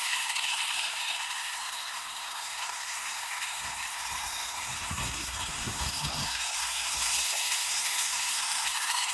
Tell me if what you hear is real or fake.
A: fake